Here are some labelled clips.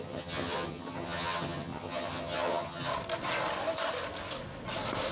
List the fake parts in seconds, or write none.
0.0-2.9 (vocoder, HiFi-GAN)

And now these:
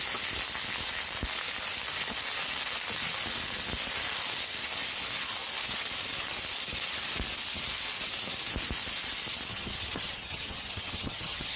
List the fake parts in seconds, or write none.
9.5-11.6 (vocoder, HiFi-GAN)

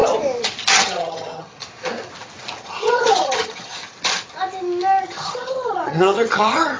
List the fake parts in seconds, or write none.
0.7-1.6 (vocoder, HiFi-GAN); 2.6-3.8; 5.0-6.8

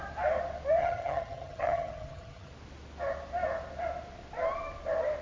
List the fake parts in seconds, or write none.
0.8-2.5 (vocoder, HiFi-GAN)

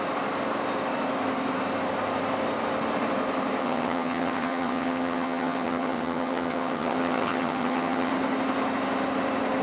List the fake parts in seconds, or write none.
3.6-8.1 (vocoder, HiFi-GAN)